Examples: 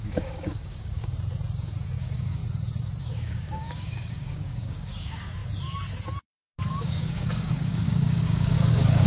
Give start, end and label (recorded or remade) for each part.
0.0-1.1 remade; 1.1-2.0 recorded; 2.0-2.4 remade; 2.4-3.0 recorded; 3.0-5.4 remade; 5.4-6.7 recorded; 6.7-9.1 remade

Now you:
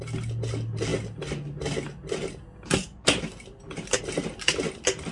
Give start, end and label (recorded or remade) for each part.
0.0-5.1 recorded

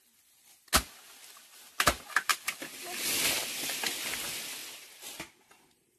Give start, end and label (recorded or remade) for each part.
0.0-6.0 recorded

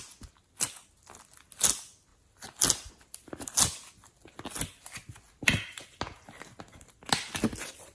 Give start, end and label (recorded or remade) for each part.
0.0-7.9 recorded

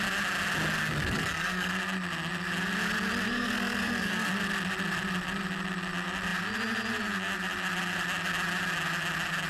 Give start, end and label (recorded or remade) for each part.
0.0-0.8 recorded; 0.8-1.7 remade; 1.7-3.3 recorded; 3.3-4.3 remade; 4.3-9.5 recorded